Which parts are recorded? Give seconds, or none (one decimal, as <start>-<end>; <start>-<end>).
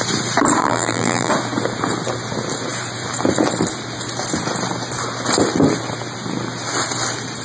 0.0-0.6; 1.3-7.4